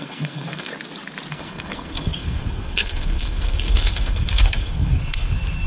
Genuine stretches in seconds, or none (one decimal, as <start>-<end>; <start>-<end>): 0.7-1.3